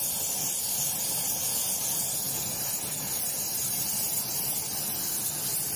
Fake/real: real